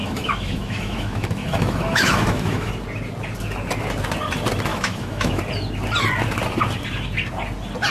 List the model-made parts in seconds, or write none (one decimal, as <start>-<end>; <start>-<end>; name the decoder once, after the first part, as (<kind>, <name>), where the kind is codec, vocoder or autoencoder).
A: 0.0-2.7 (autoencoder, DAC-VAE); 4.7-5.4